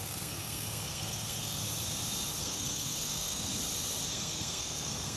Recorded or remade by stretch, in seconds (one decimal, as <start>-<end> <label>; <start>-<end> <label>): 0.0-1.6 remade; 1.6-2.4 recorded; 2.4-3.5 remade; 3.5-4.1 recorded; 4.1-5.2 remade